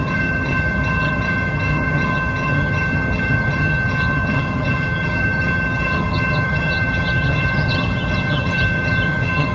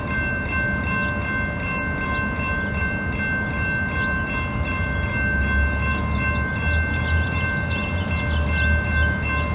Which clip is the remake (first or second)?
first